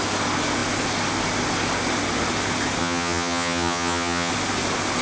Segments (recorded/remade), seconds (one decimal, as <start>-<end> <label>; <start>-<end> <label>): 0.0-2.8 recorded; 2.8-4.3 remade; 4.3-5.0 recorded